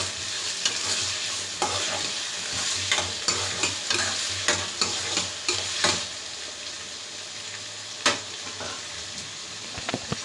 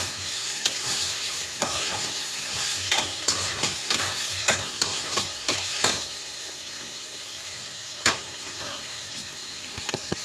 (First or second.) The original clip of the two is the first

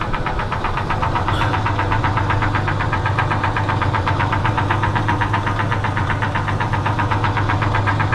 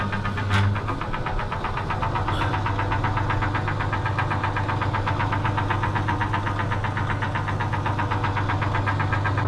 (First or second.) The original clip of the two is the second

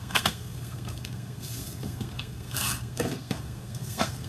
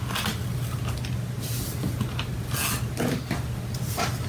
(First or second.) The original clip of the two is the second